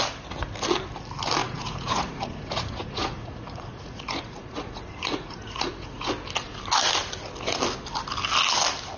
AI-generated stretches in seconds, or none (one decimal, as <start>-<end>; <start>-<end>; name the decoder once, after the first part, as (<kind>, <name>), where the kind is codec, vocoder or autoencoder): 1.4-6.1 (vocoder, Vocos)